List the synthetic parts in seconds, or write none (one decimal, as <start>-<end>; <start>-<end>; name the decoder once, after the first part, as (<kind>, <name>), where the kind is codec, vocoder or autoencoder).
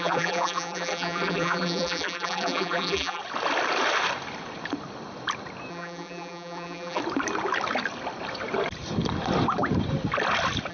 0.0-3.2 (vocoder, BigVGAN v2); 5.7-7.0